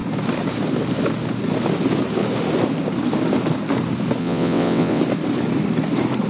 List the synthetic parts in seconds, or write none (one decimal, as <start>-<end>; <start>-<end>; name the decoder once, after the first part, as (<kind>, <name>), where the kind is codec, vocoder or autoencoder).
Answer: 4.2-5.0 (vocoder, WaveNeXt)